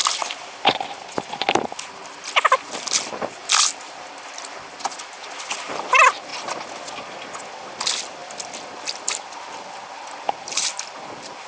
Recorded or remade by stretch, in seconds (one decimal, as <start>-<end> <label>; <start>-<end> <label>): 0.0-11.5 recorded